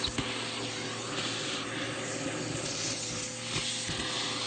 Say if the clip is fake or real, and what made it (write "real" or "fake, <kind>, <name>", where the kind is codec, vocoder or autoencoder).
real